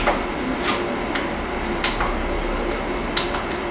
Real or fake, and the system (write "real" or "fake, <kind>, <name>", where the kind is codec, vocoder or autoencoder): real